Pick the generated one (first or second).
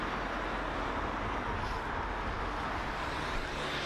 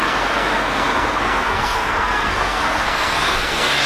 second